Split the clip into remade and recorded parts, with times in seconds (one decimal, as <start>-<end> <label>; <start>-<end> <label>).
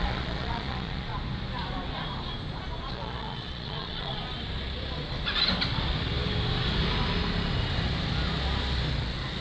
0.0-1.1 remade; 1.1-2.9 recorded; 2.9-4.2 remade; 4.2-9.4 recorded